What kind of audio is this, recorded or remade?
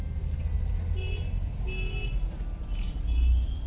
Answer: recorded